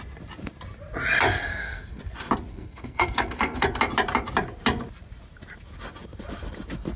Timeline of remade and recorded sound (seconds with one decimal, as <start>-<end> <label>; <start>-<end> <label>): 0.0-1.5 recorded; 1.5-2.0 remade; 2.0-2.5 recorded; 2.5-3.8 remade; 3.8-7.0 recorded